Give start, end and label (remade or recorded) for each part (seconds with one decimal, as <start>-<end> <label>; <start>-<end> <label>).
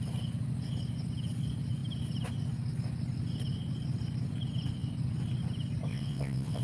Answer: 0.0-5.9 recorded; 5.9-6.6 remade